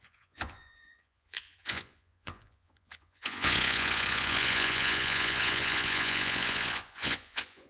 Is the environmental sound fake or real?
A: fake